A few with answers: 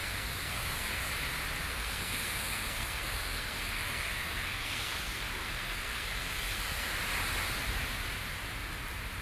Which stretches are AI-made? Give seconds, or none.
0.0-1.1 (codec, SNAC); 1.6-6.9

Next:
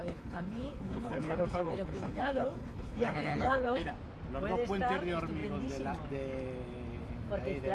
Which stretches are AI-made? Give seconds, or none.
0.0-3.9 (codec, HILCodec)

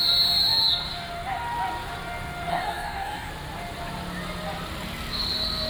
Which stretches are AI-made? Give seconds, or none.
2.5-3.3 (codec, DAC)

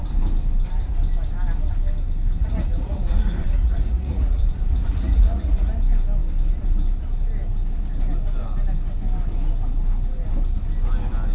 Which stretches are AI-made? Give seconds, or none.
2.4-5.7 (vocoder, Vocos)

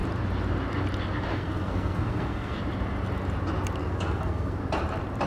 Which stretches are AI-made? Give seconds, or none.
1.3-2.6 (codec, SNAC); 3.8-4.6

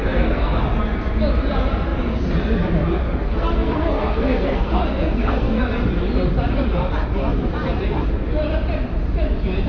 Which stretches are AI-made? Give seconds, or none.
0.0-0.6 (codec, SNAC); 3.2-5.6